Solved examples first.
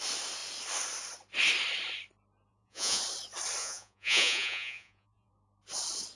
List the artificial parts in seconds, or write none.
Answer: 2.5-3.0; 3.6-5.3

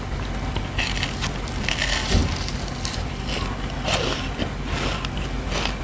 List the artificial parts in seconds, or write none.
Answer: none